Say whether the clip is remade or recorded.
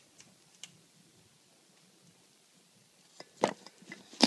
remade